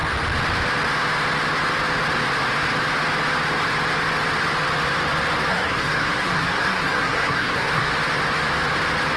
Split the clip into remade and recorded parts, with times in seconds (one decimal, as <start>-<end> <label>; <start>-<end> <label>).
0.0-5.5 recorded; 5.5-7.9 remade; 7.9-9.2 recorded